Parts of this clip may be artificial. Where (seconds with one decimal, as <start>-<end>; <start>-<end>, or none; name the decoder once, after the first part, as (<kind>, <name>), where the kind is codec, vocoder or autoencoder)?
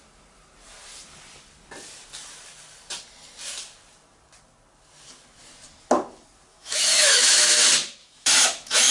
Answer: 6.5-7.6 (autoencoder, DAC-VAE); 8.0-8.9